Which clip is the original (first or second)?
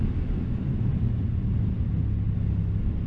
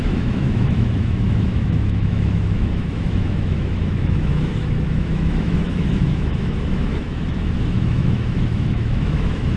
first